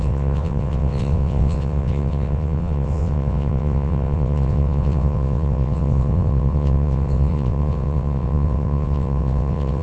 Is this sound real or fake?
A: fake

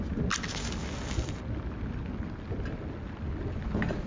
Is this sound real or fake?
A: real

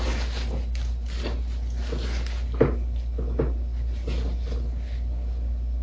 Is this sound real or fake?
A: real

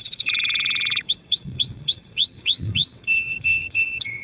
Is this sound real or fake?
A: fake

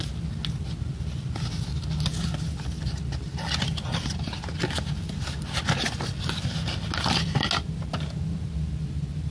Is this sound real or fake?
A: real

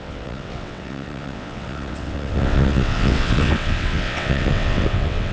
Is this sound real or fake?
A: fake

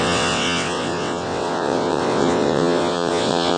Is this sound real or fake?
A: fake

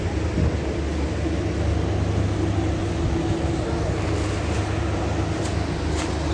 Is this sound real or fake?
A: real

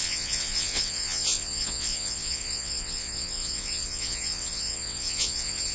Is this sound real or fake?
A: fake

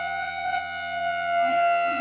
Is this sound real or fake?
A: fake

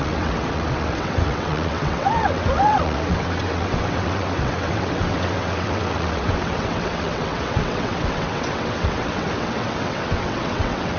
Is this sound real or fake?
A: fake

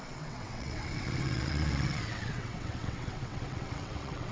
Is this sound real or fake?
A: fake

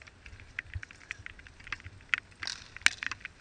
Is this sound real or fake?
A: real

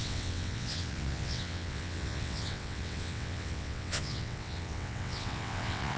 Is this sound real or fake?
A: fake